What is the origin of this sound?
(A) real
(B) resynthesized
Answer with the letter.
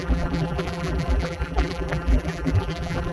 B